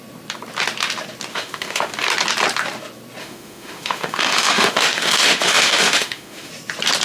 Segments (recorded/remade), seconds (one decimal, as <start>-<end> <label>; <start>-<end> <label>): 0.0-1.3 recorded; 1.3-1.9 remade; 1.9-3.2 recorded; 3.2-6.5 remade; 6.5-7.0 recorded